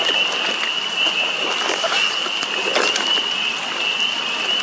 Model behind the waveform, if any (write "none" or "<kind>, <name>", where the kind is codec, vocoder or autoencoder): none